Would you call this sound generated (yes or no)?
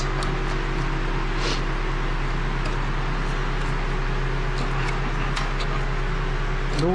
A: no